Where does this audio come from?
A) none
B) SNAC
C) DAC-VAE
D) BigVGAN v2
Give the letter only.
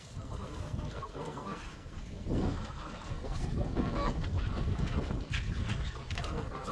B